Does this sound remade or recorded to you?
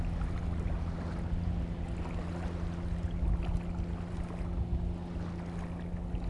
recorded